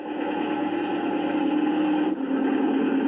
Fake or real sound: real